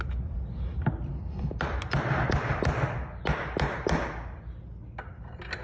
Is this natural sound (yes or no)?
yes